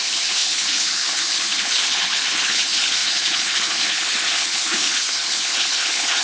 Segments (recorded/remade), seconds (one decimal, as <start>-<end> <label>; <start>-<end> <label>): 0.0-6.2 remade